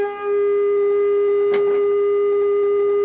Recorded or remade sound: recorded